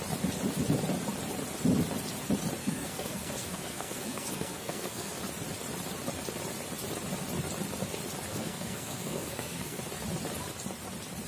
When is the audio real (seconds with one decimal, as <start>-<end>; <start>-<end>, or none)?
0.0-2.6; 5.2-8.3; 9.8-11.3